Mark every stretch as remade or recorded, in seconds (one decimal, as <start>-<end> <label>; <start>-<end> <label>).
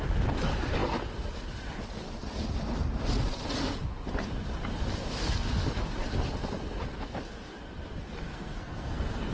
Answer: 0.0-8.3 recorded; 8.3-9.3 remade